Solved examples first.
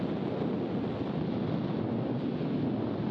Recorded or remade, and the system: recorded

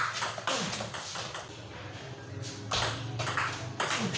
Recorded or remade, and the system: recorded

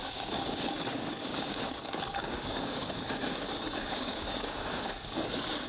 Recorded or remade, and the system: remade, codec, DAC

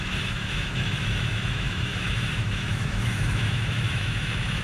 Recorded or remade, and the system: remade, autoencoder, DAC-VAE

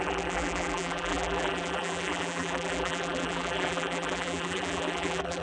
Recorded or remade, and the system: remade, vocoder, BigVGAN v2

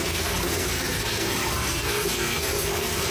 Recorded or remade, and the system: remade, codec, SNAC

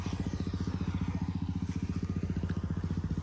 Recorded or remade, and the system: recorded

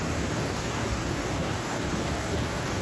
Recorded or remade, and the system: remade, codec, DAC